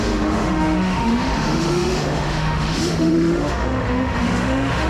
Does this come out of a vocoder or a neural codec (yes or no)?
yes